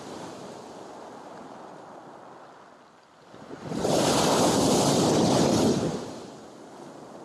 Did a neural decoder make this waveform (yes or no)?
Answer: no